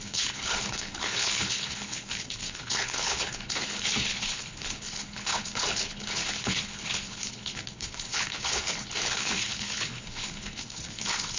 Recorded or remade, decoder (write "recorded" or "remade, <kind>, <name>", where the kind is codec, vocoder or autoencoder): remade, codec, HILCodec